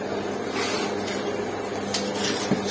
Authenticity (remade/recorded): recorded